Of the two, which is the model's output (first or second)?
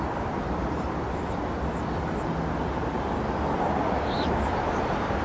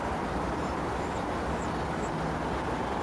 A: first